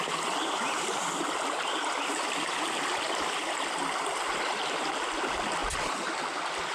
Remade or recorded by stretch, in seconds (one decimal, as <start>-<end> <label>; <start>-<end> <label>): 0.0-6.7 recorded

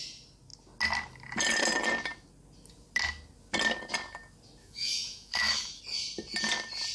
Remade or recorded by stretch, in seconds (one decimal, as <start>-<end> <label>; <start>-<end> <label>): 0.0-4.6 recorded; 4.6-5.8 remade; 5.8-6.9 recorded

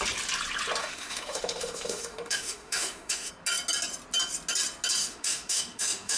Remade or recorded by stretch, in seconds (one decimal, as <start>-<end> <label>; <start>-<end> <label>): 0.0-0.8 recorded; 0.8-3.3 remade; 3.3-5.0 recorded; 5.0-6.2 remade

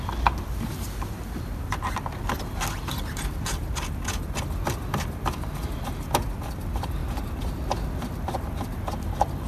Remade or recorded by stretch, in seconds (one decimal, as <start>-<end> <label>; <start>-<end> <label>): 0.0-9.5 recorded

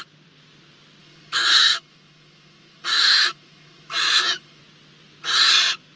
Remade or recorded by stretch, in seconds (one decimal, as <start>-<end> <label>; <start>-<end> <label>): 0.0-1.0 recorded; 1.0-4.6 remade; 4.6-6.0 recorded

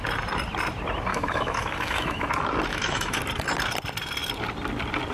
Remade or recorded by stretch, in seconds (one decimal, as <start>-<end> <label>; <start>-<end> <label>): 0.0-1.1 recorded; 1.1-2.3 remade; 2.3-2.7 recorded; 2.7-3.2 remade; 3.2-5.1 recorded